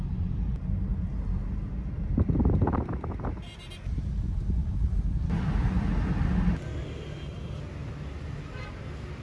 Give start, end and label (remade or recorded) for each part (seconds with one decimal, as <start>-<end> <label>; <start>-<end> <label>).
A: 0.0-4.6 recorded; 4.6-5.3 remade; 5.3-9.2 recorded